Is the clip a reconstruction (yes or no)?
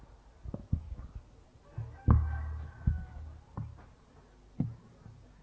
no